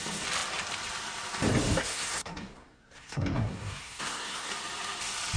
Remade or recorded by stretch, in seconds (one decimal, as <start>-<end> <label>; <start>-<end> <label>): 0.0-1.8 recorded; 1.8-4.5 remade; 4.5-5.4 recorded